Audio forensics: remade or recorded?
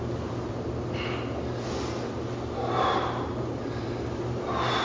recorded